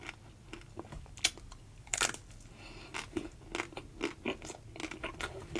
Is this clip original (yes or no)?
yes